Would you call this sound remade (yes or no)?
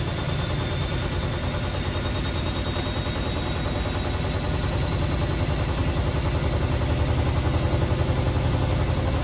no